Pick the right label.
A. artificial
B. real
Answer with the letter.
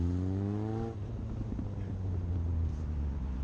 B